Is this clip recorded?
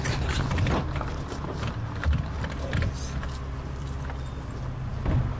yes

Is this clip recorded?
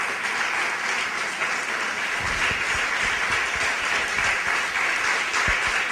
yes